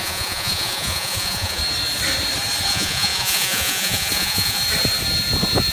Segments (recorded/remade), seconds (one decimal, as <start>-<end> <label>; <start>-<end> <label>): 0.0-1.6 remade; 1.6-2.7 recorded; 2.7-4.6 remade; 4.6-5.7 recorded